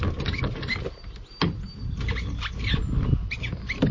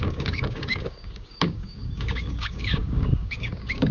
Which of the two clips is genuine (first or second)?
first